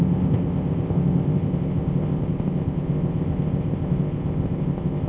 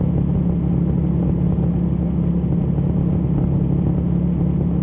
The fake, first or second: first